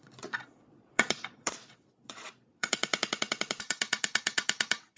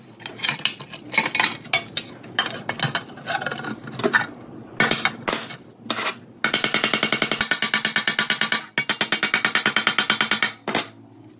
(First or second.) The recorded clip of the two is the second